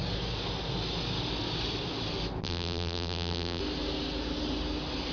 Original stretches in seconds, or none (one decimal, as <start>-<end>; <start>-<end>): 0.0-2.4; 3.6-5.1